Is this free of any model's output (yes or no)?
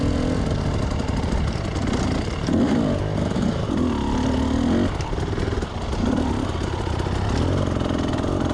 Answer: yes